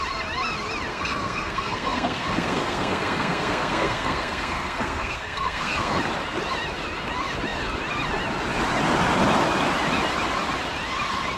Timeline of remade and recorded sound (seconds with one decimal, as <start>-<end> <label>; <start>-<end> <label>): 0.0-0.9 recorded; 0.9-6.0 remade; 6.0-11.4 recorded